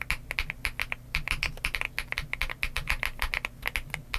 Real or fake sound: real